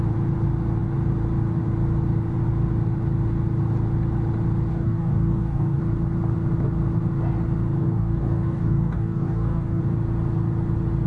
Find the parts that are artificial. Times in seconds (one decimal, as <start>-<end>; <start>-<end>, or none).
4.7-5.8; 7.8-9.8